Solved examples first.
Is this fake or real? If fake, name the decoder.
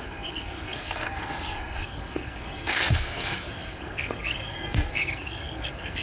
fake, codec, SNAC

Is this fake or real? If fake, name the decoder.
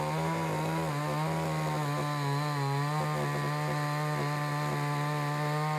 real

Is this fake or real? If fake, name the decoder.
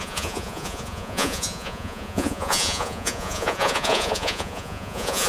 fake, vocoder, Vocos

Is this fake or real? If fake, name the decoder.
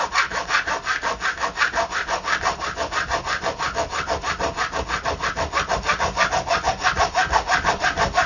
fake, vocoder, BigVGAN v2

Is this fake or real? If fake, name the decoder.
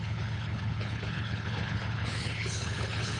fake, codec, HILCodec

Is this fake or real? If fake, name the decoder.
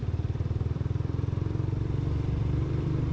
fake, vocoder, BigVGAN v2